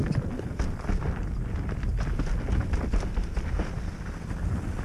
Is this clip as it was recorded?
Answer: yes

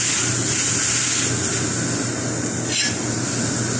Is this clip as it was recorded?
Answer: yes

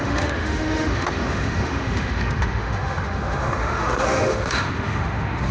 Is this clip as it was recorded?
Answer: no